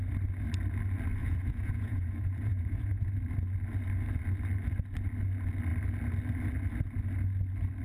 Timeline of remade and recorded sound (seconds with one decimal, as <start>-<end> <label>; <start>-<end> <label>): 0.0-1.2 recorded; 1.2-3.1 remade; 3.1-7.8 recorded